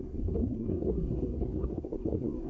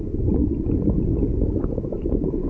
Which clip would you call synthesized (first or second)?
first